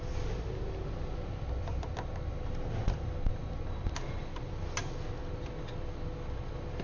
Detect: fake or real real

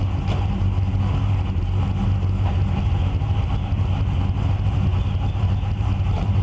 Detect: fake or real real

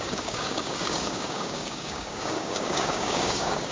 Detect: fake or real fake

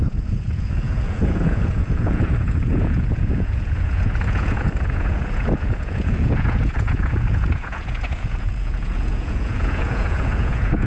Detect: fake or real fake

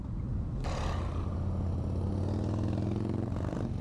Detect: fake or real real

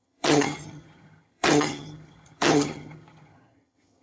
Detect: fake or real fake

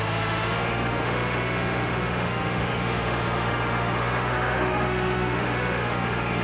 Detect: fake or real fake